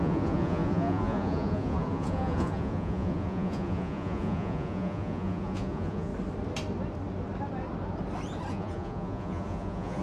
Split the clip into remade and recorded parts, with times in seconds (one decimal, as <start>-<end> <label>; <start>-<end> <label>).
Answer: 0.0-6.1 remade; 6.1-8.5 recorded; 8.5-10.0 remade